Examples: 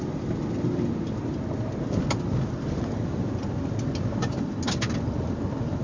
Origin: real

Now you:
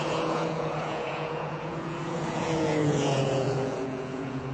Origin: fake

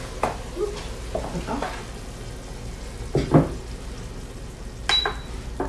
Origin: real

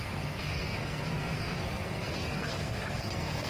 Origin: fake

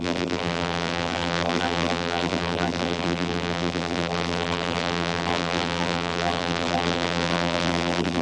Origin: fake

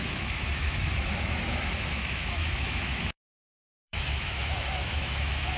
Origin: fake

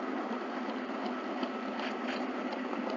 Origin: real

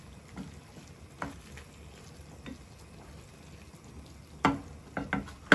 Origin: real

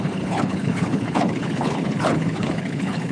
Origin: fake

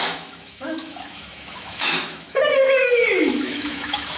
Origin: fake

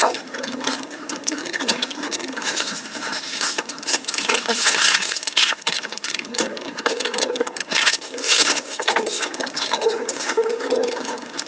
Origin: fake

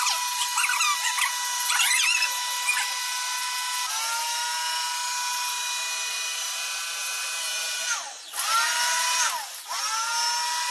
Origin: real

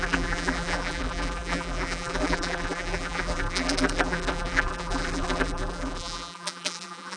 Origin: fake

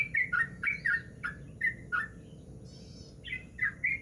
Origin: real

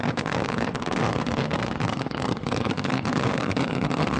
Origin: fake